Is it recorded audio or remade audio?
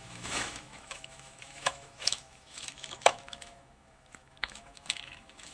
remade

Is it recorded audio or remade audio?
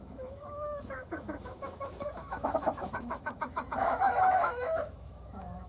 remade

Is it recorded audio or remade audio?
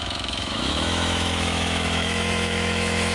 remade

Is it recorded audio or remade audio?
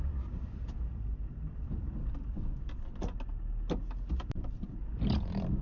recorded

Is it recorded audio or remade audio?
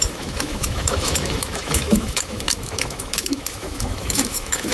remade